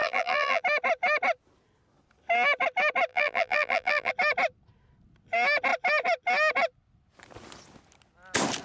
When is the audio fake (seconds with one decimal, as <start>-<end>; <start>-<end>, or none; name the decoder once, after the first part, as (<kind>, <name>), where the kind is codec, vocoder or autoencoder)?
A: 0.0-0.6 (vocoder, BigVGAN v2); 3.1-4.1